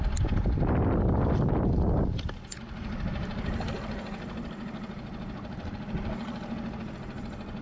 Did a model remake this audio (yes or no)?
no